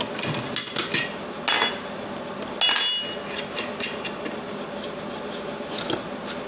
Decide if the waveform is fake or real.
real